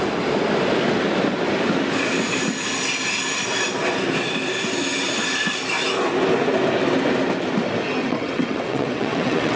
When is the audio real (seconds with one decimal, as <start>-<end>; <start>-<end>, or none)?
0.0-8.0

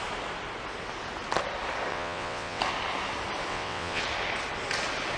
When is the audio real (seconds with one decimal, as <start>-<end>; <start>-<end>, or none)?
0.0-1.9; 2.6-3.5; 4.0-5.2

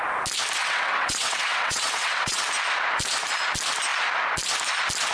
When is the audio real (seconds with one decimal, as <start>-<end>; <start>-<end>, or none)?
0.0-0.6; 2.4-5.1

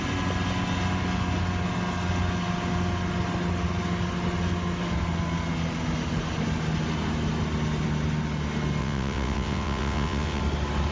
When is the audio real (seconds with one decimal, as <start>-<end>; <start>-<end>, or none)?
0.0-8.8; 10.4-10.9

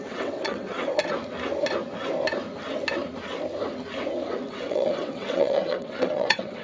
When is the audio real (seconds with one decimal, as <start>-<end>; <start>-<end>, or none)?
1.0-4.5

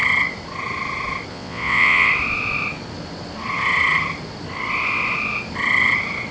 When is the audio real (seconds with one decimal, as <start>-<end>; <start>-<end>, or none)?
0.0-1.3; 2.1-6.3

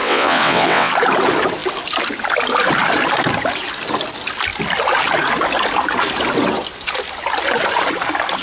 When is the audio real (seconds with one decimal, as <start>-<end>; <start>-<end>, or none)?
0.9-8.4